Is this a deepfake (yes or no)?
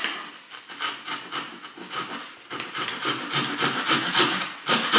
no